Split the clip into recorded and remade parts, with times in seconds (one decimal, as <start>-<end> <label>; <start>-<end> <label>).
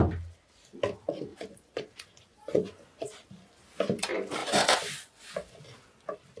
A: 0.0-1.3 recorded; 1.3-3.6 remade; 3.6-4.4 recorded; 4.4-5.6 remade; 5.6-6.4 recorded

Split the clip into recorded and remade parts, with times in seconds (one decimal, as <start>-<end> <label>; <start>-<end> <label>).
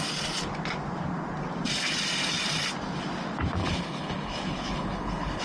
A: 0.0-3.6 recorded; 3.6-5.4 remade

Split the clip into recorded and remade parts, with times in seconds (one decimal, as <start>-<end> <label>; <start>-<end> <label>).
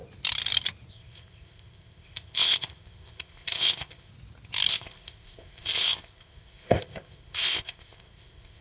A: 0.0-0.9 recorded; 0.9-4.1 remade; 4.1-4.7 recorded; 4.7-8.6 remade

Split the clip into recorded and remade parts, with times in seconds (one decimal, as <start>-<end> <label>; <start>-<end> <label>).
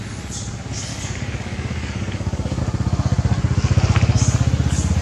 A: 0.0-0.9 recorded; 0.9-2.6 remade; 2.6-5.0 recorded